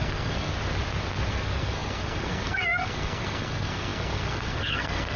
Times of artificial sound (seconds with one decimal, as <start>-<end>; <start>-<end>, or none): 0.0-0.5; 1.3-5.2